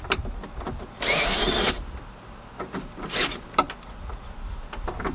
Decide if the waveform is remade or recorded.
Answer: recorded